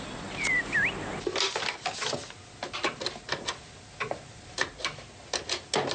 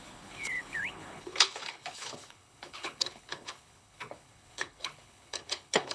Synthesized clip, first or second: second